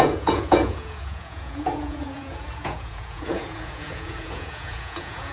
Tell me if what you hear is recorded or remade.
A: remade